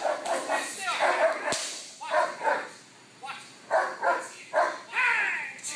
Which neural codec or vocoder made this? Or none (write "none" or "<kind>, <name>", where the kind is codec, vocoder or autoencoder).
none